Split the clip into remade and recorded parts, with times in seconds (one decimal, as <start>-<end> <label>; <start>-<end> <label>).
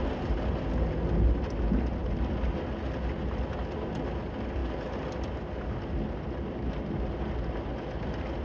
0.0-8.4 recorded